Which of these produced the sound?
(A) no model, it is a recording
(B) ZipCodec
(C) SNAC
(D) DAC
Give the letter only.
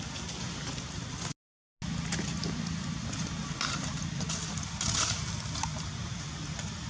A